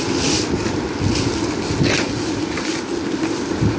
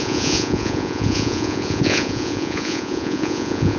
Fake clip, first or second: second